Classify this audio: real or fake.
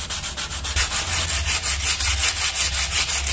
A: real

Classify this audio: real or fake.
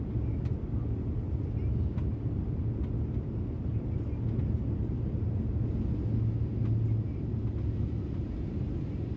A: real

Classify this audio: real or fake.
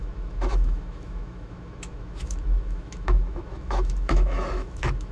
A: fake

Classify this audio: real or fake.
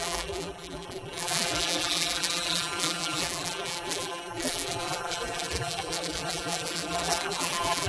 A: fake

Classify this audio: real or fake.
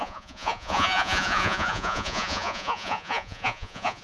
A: fake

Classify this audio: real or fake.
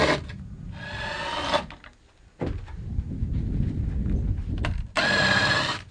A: real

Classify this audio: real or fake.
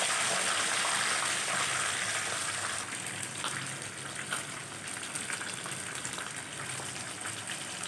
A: real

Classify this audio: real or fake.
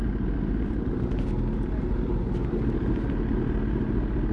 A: real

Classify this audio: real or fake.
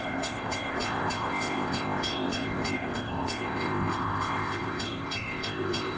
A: fake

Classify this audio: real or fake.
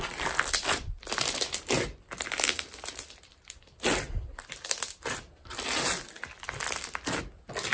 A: real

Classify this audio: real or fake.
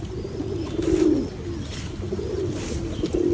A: real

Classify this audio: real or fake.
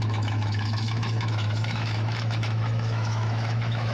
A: fake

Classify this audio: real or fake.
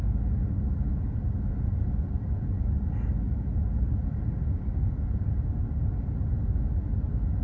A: real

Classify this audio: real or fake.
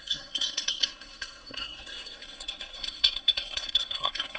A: fake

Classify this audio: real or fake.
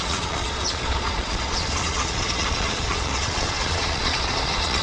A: fake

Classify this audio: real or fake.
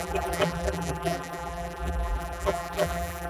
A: fake